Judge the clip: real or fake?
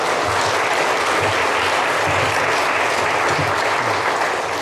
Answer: real